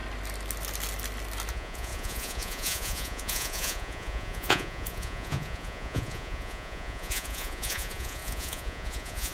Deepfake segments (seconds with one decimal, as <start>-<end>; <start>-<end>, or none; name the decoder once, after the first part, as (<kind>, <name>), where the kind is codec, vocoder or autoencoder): 1.5-9.3 (vocoder, Vocos)